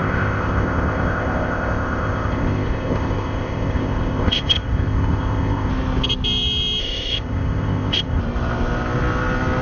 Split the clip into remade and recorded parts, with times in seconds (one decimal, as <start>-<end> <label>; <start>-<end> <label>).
0.0-5.7 remade; 5.7-6.8 recorded; 6.8-8.2 remade; 8.2-9.6 recorded